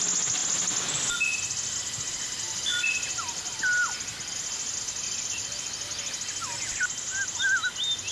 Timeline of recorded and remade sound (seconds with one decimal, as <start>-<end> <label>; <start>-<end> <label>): 0.0-8.1 recorded